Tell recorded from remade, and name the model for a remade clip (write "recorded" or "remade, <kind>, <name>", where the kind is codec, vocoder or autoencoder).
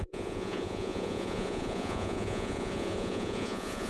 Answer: remade, vocoder, Vocos